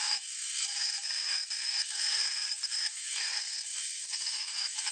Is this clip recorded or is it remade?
remade